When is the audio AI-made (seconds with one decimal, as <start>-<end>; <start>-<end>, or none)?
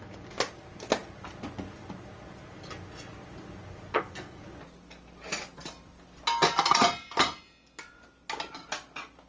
3.9-4.4